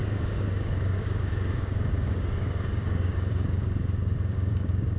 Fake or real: fake